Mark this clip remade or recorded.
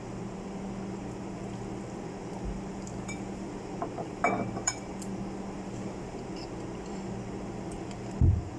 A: remade